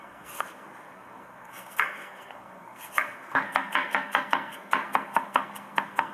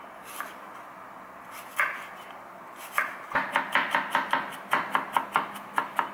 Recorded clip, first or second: second